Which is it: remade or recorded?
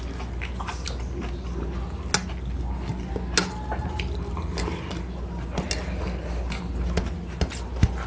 recorded